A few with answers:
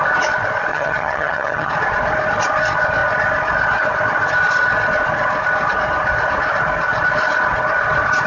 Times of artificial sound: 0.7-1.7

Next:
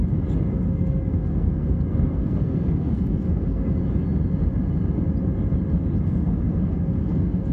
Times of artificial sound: 0.5-3.8; 6.0-7.5

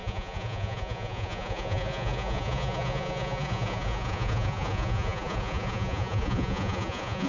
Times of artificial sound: 0.0-7.3

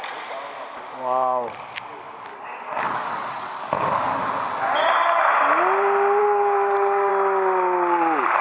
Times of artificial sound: 2.3-4.3; 6.2-7.1

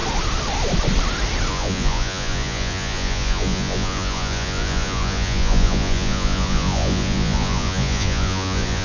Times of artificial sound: 1.5-8.8

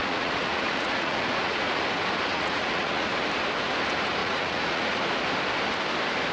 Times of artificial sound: 0.0-1.8; 2.3-3.1; 4.2-5.0